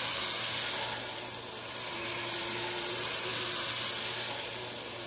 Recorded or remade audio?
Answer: recorded